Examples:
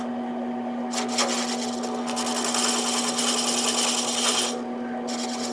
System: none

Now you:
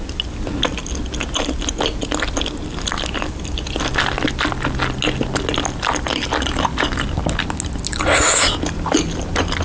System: none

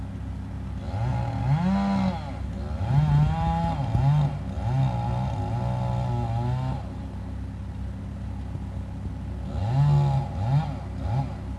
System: none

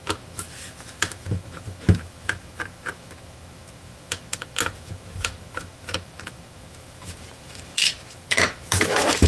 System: autoencoder, DAC-VAE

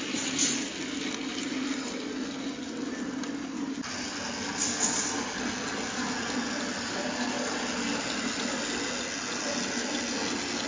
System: none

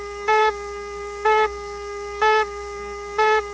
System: codec, SNAC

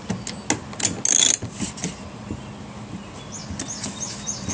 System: none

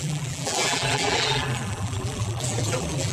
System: vocoder, BigVGAN v2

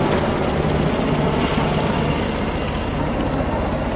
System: none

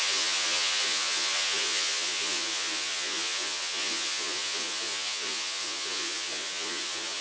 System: vocoder, Vocos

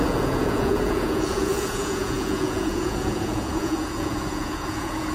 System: vocoder, Vocos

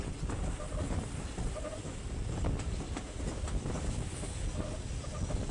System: none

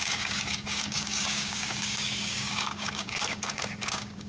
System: codec, DAC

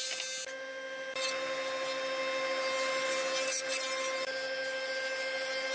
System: none